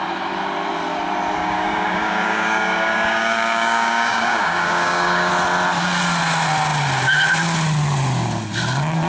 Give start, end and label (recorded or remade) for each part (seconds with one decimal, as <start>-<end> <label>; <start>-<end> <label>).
0.0-1.4 recorded; 1.4-5.3 remade; 5.3-9.1 recorded